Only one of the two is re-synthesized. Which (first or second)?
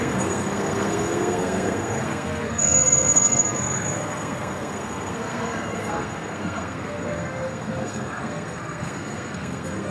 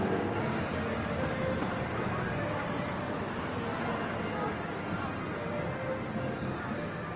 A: first